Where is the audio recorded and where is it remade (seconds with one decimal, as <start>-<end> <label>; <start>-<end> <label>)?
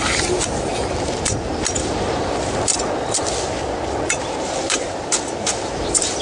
0.0-2.7 remade; 2.7-4.4 recorded; 4.4-6.2 remade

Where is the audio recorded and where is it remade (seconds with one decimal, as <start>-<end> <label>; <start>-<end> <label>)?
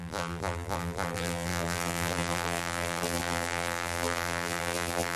0.0-5.2 remade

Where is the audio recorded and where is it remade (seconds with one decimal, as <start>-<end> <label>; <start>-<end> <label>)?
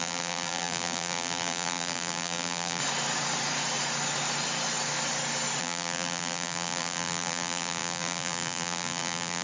0.0-2.8 remade; 2.8-5.6 recorded; 5.6-9.4 remade